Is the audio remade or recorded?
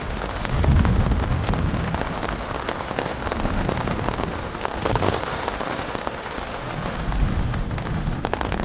remade